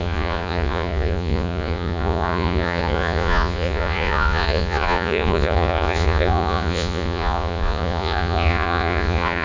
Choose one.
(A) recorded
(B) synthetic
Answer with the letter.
B